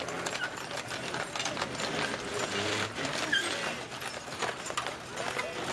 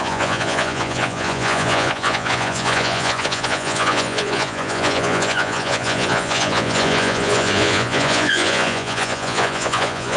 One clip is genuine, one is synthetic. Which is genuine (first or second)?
first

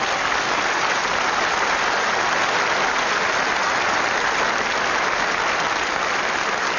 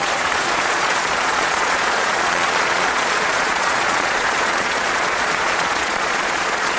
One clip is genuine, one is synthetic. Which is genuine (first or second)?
first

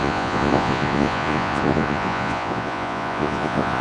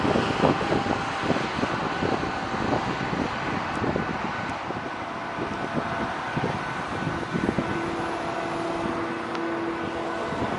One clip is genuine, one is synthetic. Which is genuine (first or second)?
second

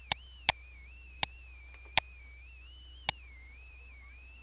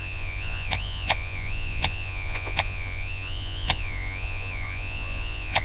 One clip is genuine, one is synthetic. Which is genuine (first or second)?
first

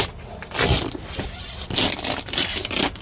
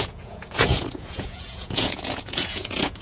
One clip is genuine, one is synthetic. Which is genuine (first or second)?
first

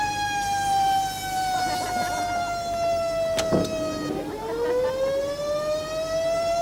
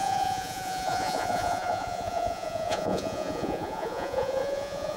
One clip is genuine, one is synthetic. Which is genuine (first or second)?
first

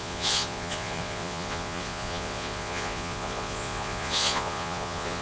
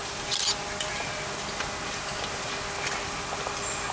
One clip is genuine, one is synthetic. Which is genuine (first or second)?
second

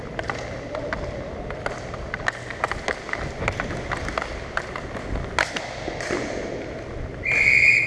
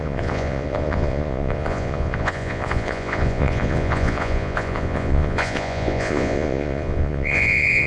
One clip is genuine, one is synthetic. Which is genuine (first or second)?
first